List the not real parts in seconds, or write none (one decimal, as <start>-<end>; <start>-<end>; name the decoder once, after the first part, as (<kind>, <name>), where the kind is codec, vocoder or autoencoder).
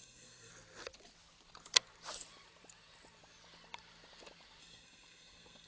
0.0-0.5 (codec, SNAC); 4.6-5.7